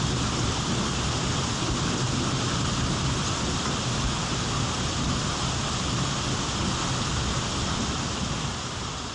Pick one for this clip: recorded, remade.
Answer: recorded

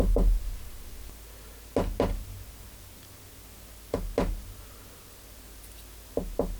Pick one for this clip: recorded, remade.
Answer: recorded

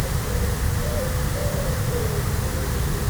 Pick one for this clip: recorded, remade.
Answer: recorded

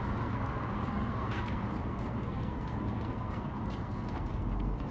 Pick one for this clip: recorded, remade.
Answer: remade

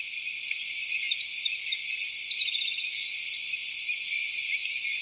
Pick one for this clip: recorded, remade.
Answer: recorded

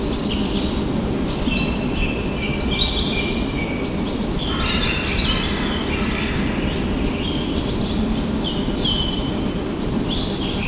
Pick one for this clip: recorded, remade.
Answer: recorded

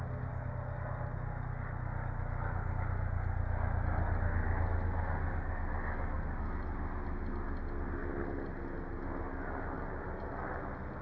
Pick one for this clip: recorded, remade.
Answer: recorded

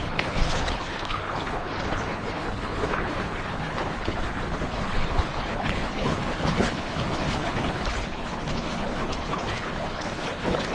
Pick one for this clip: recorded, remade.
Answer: remade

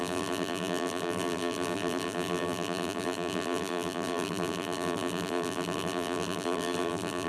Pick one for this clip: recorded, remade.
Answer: remade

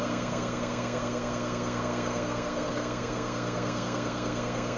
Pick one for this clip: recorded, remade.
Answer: remade